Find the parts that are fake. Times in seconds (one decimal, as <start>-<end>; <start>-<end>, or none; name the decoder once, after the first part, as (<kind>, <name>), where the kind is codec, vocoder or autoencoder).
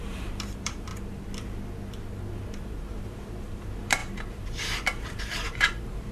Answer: 0.0-0.9 (vocoder, BigVGAN v2); 2.2-6.1